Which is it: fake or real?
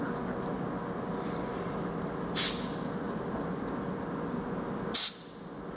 real